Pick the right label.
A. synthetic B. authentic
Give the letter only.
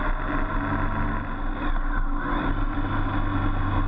B